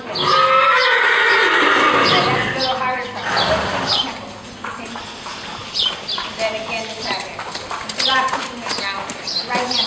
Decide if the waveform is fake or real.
real